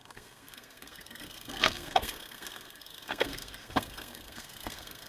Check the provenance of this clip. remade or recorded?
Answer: remade